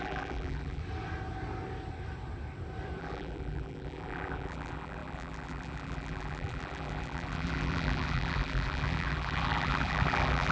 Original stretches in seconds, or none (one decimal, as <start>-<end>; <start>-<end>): 0.8-3.0

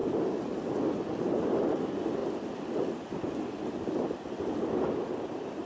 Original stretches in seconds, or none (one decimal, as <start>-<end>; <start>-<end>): 0.0-5.7

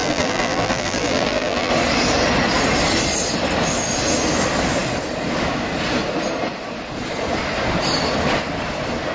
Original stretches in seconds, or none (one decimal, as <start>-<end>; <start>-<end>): 1.7-9.1

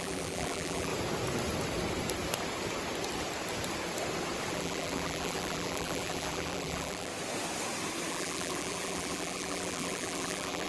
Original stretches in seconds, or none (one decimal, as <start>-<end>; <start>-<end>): 0.9-4.5; 7.1-8.1

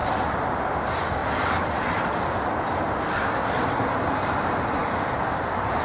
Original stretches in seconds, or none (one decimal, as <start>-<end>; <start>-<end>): 0.0-0.7

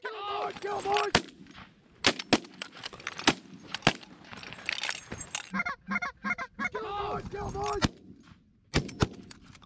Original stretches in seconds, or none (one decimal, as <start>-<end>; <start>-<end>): 0.0-9.7

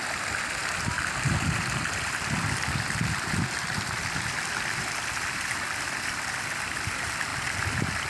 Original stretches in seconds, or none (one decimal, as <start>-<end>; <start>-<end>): 0.0-8.1